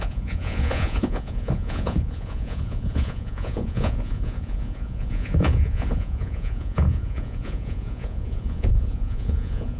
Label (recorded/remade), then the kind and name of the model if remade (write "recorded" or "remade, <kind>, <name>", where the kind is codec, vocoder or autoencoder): remade, vocoder, Vocos